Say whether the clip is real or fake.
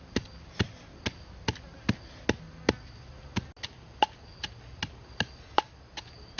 real